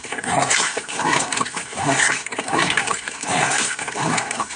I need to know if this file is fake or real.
fake